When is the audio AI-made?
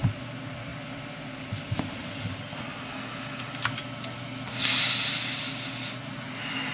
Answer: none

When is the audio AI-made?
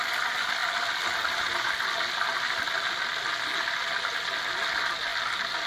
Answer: none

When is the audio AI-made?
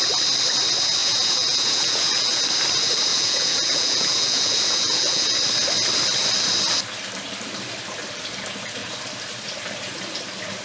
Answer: 1.0-2.4 (vocoder, Vocos); 3.1-5.4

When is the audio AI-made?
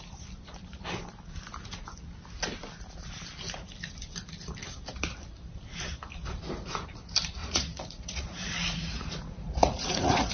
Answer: 7.4-10.3 (vocoder, Vocos)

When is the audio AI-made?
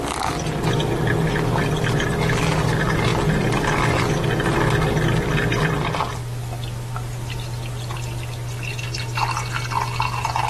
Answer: none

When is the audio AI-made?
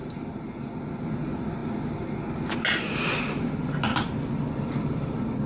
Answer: none